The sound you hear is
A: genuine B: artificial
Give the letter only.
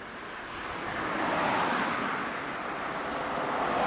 A